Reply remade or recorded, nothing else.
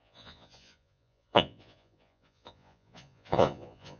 remade